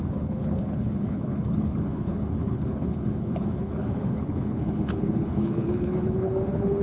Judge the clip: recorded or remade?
remade